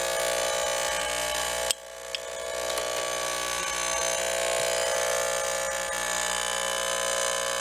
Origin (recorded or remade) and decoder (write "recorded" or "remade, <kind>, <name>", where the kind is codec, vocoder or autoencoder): recorded